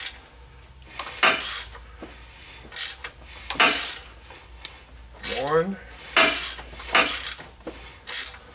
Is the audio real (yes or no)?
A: yes